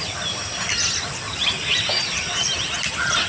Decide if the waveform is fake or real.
fake